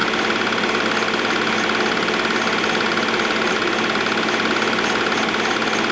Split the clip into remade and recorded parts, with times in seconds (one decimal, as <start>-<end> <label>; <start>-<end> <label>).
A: 0.0-5.9 recorded